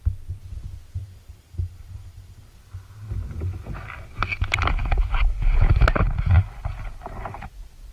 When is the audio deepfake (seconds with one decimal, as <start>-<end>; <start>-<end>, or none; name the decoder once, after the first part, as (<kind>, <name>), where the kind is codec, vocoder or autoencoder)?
1.0-2.5 (vocoder, BigVGAN v2)